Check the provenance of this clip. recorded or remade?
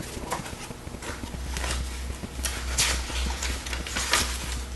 recorded